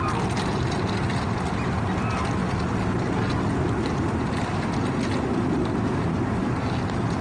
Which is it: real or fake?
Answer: real